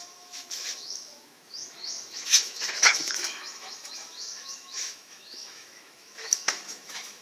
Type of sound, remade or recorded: remade